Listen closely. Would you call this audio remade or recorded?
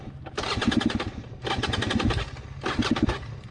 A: recorded